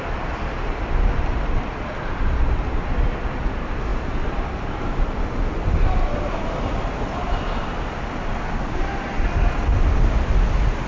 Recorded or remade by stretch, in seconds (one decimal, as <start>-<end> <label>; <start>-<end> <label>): 0.0-10.9 recorded